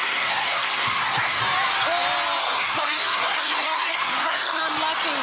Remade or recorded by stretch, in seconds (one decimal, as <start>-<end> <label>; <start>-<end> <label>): 0.0-1.4 remade; 1.4-2.4 recorded; 2.4-4.6 remade; 4.6-5.2 recorded